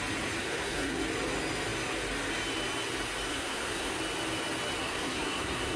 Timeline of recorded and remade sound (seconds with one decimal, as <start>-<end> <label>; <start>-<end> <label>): 0.0-0.4 recorded; 0.4-1.0 remade; 1.0-3.3 recorded; 3.3-3.9 remade; 3.9-4.8 recorded; 4.8-5.8 remade